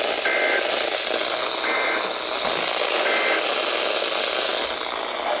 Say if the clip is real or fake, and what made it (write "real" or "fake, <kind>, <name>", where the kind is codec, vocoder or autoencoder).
real